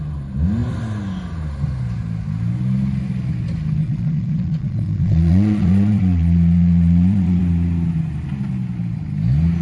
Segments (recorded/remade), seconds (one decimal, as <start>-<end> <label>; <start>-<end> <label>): 0.0-3.8 recorded; 3.8-7.4 remade; 7.4-9.6 recorded

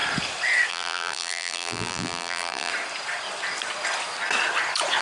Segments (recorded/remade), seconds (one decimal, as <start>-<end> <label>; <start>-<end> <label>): 0.0-0.7 recorded; 0.7-2.7 remade; 2.7-5.0 recorded

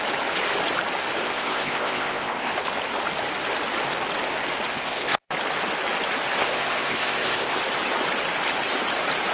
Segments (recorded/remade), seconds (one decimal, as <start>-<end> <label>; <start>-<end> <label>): 0.0-1.2 recorded; 1.2-2.5 remade; 2.5-4.7 recorded; 4.7-5.3 remade; 5.3-6.4 recorded; 6.4-7.6 remade; 7.6-9.3 recorded

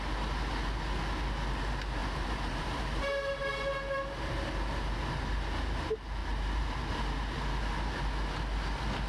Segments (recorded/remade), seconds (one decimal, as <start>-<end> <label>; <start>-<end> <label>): 0.0-2.0 recorded; 2.0-3.4 remade; 3.4-6.2 recorded; 6.2-6.9 remade; 6.9-9.1 recorded

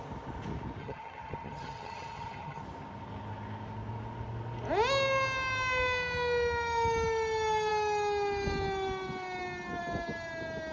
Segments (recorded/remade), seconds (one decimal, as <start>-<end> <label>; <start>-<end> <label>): 0.0-0.8 recorded; 0.8-2.6 remade; 2.6-10.7 recorded